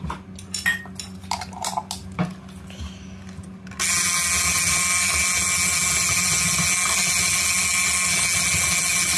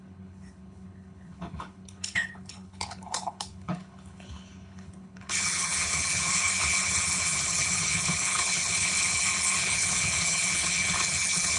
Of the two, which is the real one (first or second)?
first